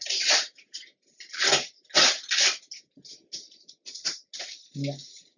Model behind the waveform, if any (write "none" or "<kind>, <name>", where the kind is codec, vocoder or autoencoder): none